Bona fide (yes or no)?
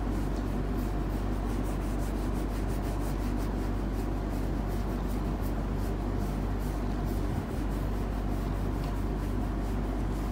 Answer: yes